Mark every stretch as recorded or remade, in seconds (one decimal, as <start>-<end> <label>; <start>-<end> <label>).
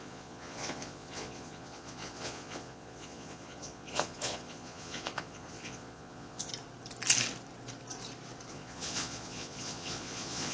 0.0-6.5 remade; 6.5-8.5 recorded; 8.5-10.5 remade